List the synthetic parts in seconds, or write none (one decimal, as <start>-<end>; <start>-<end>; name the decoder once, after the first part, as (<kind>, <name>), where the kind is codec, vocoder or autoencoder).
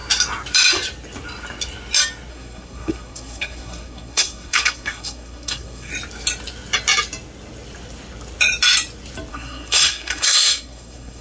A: 2.3-5.9 (codec, SNAC); 9.3-11.2